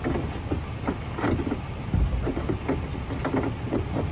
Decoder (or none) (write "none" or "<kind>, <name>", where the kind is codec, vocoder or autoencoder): none